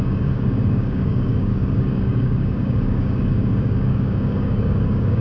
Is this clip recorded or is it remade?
remade